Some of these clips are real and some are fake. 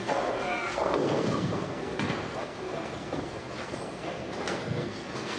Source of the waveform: fake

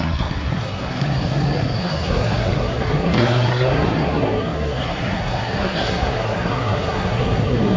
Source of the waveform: fake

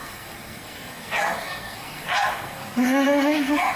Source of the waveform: fake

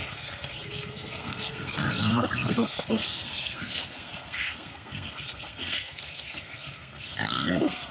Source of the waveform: fake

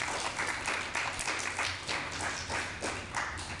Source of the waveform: real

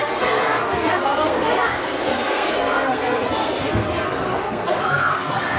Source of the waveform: fake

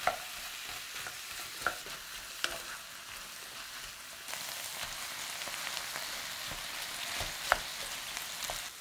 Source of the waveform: real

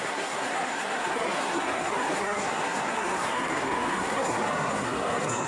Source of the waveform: fake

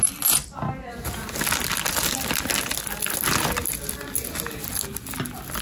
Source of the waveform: real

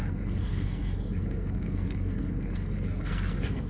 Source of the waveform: fake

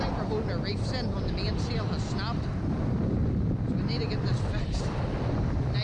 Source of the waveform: real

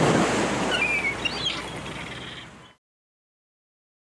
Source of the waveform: real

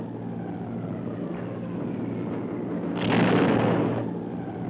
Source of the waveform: real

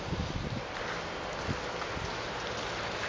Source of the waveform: real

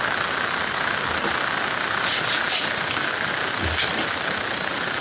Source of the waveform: real